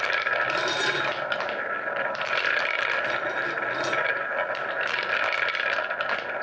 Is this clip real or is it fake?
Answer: real